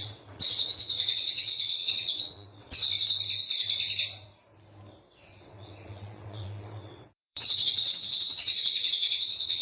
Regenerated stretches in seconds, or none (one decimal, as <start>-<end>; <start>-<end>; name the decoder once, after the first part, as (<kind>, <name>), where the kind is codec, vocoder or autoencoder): 0.0-2.8 (vocoder, WaveNeXt); 5.0-9.6